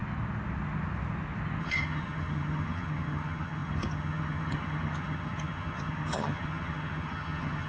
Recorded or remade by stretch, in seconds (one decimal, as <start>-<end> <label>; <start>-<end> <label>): 0.0-1.6 recorded; 1.6-7.7 remade